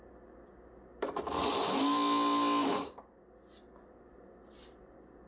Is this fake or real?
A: real